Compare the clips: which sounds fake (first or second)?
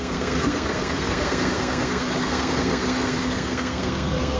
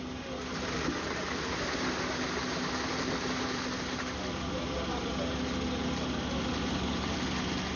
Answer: first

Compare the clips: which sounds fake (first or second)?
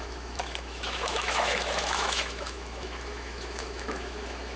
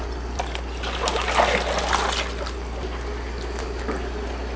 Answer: first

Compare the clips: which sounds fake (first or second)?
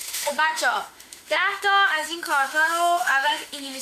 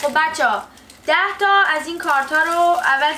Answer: first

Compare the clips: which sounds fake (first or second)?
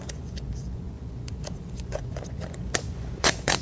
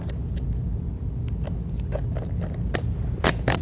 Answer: first